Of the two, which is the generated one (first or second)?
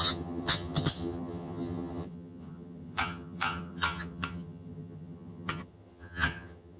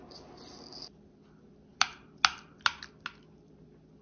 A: first